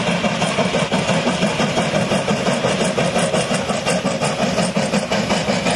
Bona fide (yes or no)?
yes